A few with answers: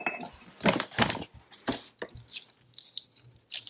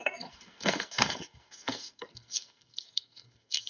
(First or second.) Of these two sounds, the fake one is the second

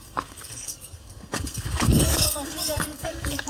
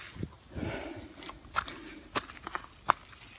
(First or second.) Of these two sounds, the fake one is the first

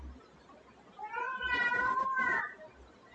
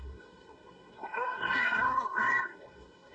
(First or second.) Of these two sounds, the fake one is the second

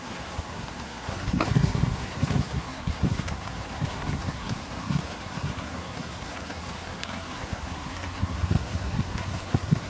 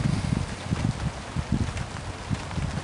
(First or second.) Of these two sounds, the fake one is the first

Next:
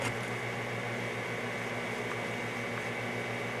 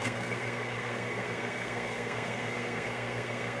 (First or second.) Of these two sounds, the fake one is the second